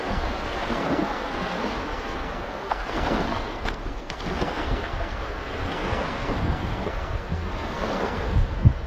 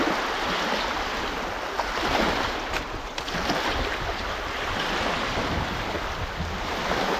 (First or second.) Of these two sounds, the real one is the second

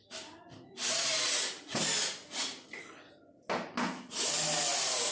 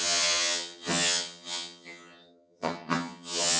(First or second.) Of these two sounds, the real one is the first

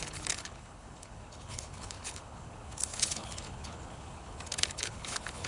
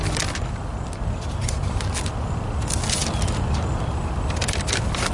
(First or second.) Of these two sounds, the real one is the second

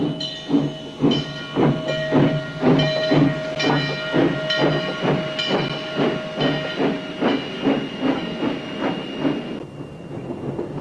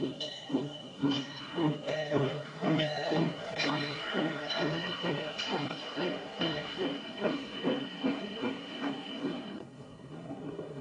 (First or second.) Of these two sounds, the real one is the first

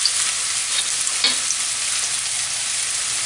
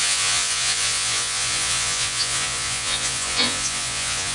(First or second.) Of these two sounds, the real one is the first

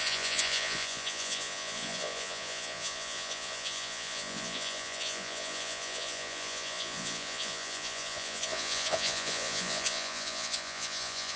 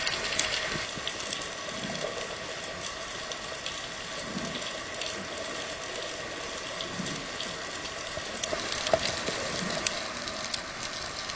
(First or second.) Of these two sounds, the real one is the second